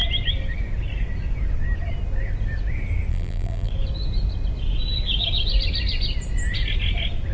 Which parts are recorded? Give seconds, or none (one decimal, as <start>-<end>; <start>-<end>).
0.0-3.1; 3.7-7.3